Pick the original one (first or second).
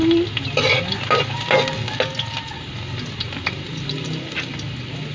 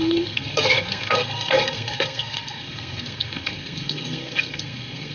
first